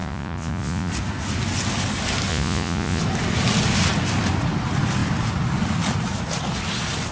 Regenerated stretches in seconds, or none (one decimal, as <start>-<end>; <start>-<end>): 0.0-0.9; 2.3-3.0